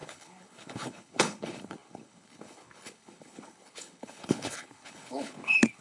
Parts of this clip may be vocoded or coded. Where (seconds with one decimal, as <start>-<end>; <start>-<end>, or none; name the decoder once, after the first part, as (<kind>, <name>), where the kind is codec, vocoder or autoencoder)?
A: 0.0-5.8 (codec, HILCodec)